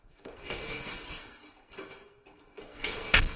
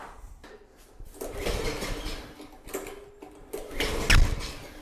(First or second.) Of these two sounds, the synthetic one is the first